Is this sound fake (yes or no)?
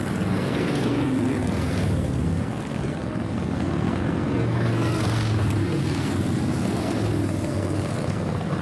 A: yes